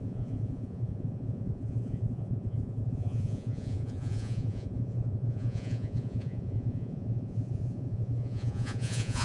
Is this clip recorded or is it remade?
remade